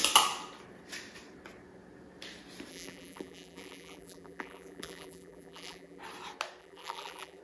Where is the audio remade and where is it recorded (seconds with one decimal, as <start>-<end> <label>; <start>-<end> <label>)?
0.0-2.7 recorded; 2.7-6.0 remade; 6.0-6.6 recorded; 6.6-7.4 remade